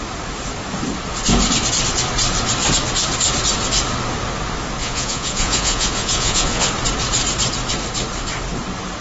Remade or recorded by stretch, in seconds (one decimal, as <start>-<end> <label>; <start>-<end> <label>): 0.0-4.8 recorded; 4.8-6.7 remade; 6.7-9.0 recorded